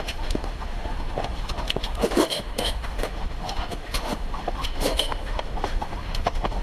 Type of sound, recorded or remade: remade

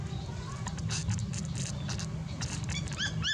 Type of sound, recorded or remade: recorded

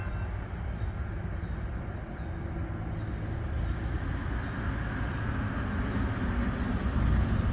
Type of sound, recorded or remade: recorded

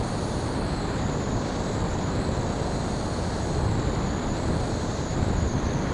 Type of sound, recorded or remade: recorded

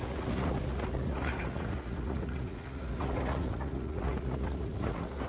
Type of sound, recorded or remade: remade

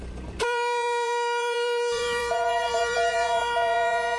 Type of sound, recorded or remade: remade